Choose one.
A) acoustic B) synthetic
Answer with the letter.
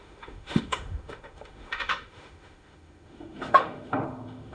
B